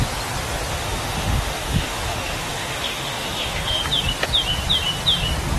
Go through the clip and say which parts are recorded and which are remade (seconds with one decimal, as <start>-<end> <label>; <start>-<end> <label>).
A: 0.0-0.7 recorded; 0.7-3.8 remade; 3.8-5.6 recorded